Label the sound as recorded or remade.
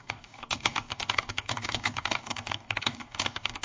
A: remade